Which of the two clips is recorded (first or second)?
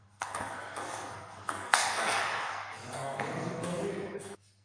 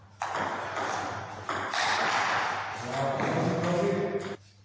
second